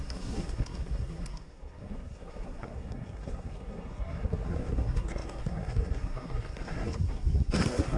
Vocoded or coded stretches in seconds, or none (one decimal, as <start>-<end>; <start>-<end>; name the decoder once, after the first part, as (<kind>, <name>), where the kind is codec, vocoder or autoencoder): 0.0-8.0 (codec, SNAC)